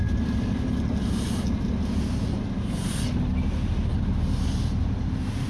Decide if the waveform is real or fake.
real